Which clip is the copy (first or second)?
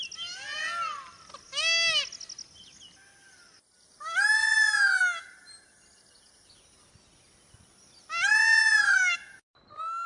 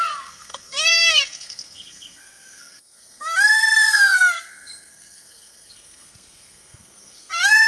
second